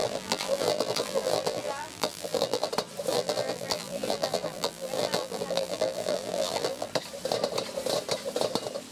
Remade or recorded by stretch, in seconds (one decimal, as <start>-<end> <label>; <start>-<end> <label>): 0.0-2.7 remade; 2.7-3.1 recorded; 3.1-6.9 remade; 6.9-8.9 recorded